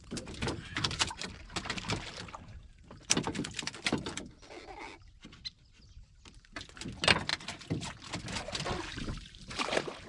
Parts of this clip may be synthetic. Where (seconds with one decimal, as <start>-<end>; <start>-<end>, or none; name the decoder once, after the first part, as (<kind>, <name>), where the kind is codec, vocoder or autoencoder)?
8.9-10.1 (vocoder, BigVGAN v2)